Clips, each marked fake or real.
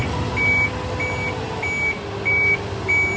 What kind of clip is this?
real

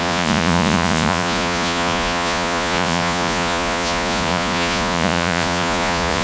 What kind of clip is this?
fake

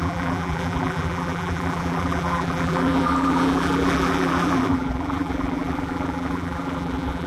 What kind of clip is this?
fake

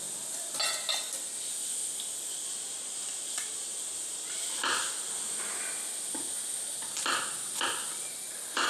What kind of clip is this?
real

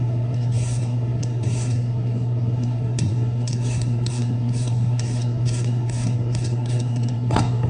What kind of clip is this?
fake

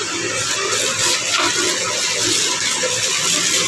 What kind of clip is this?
real